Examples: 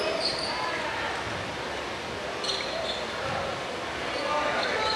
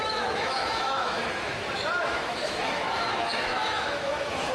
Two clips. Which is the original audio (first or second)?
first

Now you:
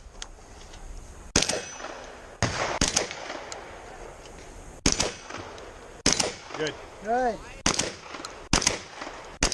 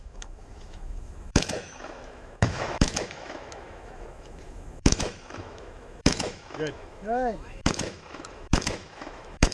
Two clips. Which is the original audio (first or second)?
first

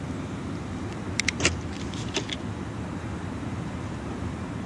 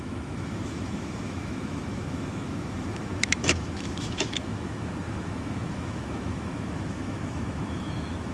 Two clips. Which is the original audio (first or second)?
first